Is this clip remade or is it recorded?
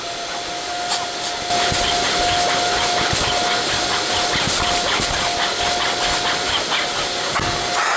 recorded